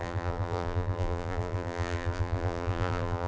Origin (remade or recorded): remade